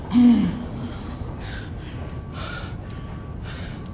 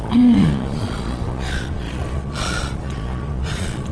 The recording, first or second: first